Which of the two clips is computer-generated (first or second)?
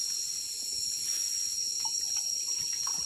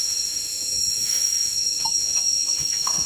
second